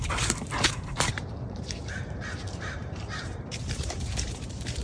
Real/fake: fake